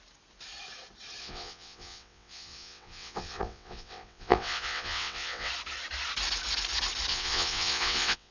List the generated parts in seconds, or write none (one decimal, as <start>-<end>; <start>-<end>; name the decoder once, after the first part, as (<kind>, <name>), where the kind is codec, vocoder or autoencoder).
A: 1.2-5.5 (vocoder, WaveNeXt); 7.1-8.3